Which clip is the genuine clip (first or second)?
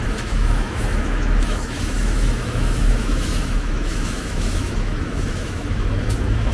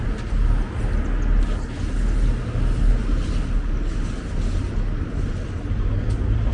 second